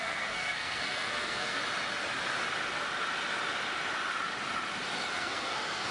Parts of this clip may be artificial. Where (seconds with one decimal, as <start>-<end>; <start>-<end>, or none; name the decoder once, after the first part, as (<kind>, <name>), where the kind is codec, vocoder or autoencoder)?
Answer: 0.0-1.6 (codec, SNAC); 5.1-5.9